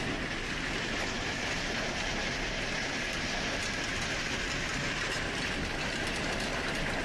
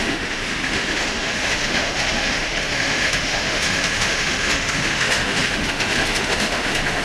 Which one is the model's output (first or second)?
second